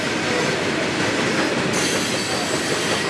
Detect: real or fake real